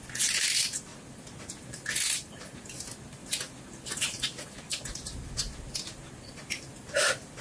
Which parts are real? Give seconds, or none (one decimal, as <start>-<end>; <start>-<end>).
0.0-7.4